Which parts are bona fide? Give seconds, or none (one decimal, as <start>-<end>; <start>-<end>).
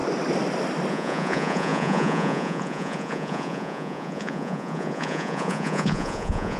0.0-0.9